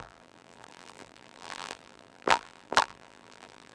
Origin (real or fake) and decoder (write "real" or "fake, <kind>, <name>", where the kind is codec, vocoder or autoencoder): fake, vocoder, BigVGAN v2